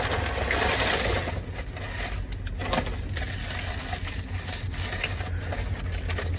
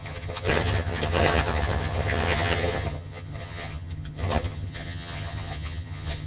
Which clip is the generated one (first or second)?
second